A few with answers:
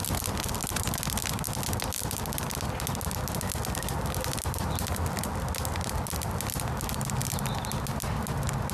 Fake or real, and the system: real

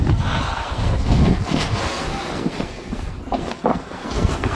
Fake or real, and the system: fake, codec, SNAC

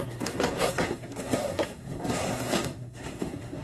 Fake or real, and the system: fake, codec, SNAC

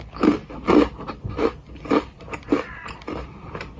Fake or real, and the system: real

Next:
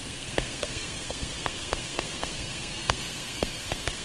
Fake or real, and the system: fake, codec, SNAC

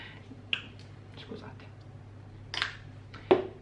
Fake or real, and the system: real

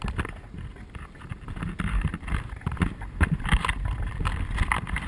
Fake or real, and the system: real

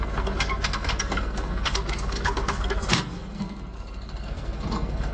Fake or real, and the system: fake, codec, SNAC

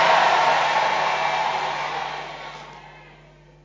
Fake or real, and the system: real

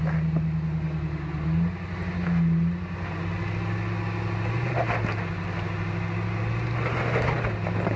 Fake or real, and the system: real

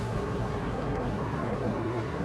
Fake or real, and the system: fake, codec, SNAC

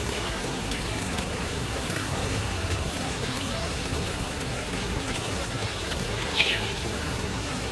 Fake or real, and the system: fake, codec, SNAC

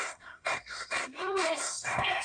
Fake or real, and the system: fake, codec, SNAC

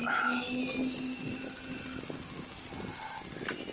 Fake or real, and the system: real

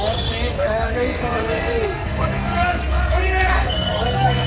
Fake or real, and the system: fake, codec, SNAC